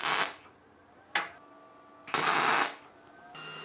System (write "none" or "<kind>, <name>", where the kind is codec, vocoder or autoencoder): none